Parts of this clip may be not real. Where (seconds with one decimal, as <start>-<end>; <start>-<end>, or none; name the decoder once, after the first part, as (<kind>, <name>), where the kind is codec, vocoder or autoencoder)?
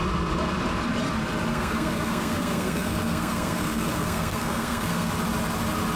1.5-5.1 (codec, SNAC)